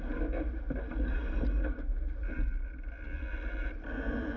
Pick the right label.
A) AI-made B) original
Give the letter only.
B